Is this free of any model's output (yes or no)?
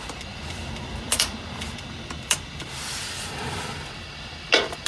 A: no